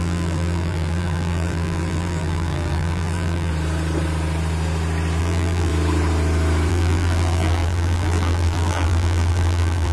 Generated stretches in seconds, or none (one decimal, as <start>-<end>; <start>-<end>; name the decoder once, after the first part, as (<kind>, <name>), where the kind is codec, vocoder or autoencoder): 0.0-3.5 (vocoder, BigVGAN v2); 5.2-5.7; 6.7-9.9